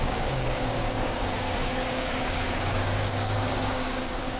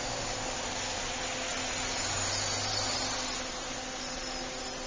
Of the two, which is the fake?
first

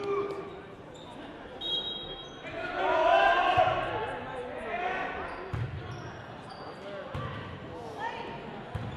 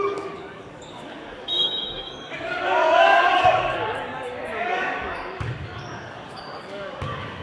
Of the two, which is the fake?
second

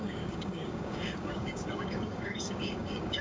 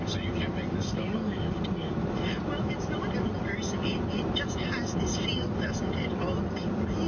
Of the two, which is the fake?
first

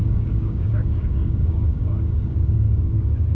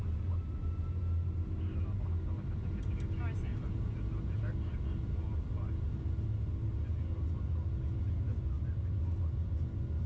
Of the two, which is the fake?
first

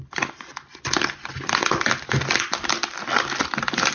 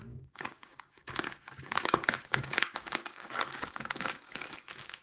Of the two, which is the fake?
second